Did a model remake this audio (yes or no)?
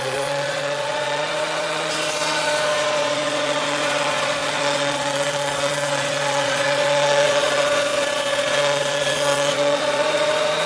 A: yes